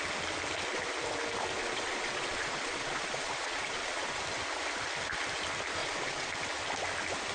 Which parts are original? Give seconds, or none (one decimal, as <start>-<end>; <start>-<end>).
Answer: 0.0-1.6; 4.2-5.8; 6.3-7.3